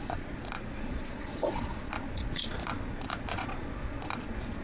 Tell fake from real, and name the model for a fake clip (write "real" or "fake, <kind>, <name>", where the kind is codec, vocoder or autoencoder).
fake, vocoder, Vocos